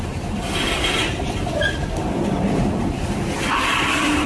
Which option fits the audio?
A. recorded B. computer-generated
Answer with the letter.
B